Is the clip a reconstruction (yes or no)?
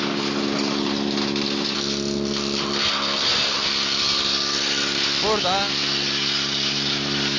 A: no